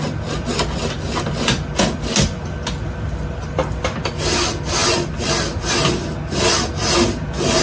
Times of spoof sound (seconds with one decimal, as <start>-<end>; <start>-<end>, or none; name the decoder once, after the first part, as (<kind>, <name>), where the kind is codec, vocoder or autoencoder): none